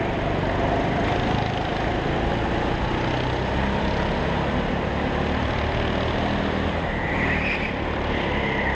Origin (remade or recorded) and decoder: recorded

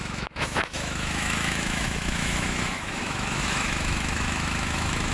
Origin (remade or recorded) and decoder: remade, autoencoder, DAC-VAE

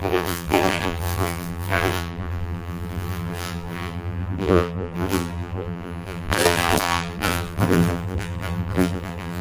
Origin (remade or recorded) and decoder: remade, vocoder, BigVGAN v2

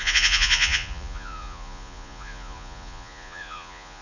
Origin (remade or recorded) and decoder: remade, vocoder, Vocos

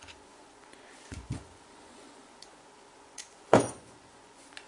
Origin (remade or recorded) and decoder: remade, vocoder, Vocos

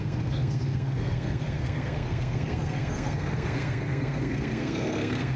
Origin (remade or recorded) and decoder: remade, codec, SNAC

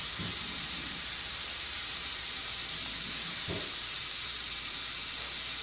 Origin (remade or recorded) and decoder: remade, vocoder, BigVGAN v2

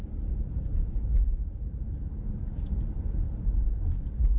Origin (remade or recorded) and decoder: remade, vocoder, BigVGAN v2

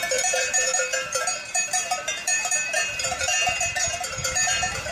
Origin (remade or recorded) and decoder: remade, vocoder, BigVGAN v2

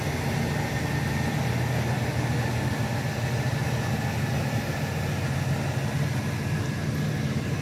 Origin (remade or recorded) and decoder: recorded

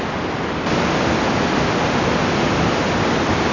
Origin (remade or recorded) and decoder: recorded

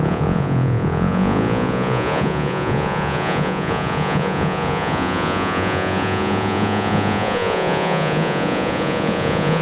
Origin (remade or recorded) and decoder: remade, vocoder, Vocos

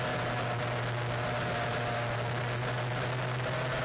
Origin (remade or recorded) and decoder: recorded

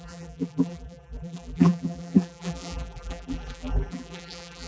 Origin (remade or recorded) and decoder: remade, vocoder, BigVGAN v2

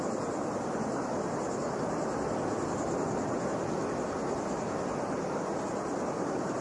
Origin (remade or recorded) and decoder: recorded